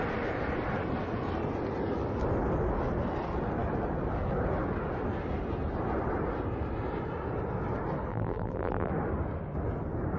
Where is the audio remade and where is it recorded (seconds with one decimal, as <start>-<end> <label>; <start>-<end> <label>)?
0.0-8.1 recorded; 8.1-8.9 remade; 8.9-10.2 recorded